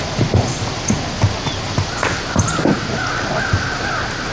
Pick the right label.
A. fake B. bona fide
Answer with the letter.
B